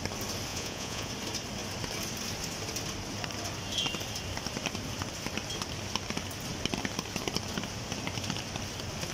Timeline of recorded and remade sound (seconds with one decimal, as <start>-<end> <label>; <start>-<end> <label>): 0.0-0.5 recorded; 0.5-1.1 remade; 1.1-9.1 recorded